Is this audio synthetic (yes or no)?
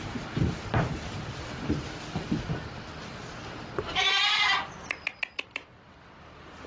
no